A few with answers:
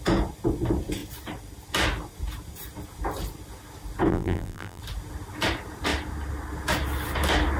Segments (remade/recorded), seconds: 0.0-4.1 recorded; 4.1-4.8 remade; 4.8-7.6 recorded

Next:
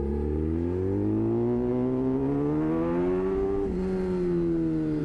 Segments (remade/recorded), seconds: 0.0-5.0 recorded

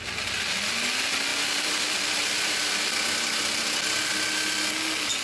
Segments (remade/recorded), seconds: 0.0-1.3 recorded; 1.3-3.4 remade; 3.4-5.2 recorded

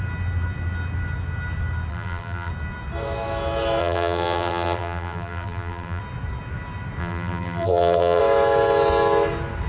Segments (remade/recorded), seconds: 0.0-1.9 recorded; 1.9-2.5 remade; 2.5-3.8 recorded; 3.8-6.0 remade; 6.0-7.0 recorded; 7.0-8.2 remade; 8.2-9.7 recorded

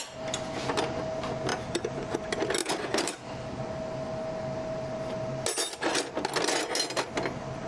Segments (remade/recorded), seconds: 0.0-1.5 recorded; 1.5-2.1 remade; 2.1-2.6 recorded; 2.6-3.6 remade; 3.6-7.7 recorded